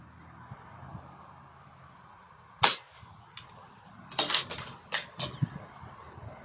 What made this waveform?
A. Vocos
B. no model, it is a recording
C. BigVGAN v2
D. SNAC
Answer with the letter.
B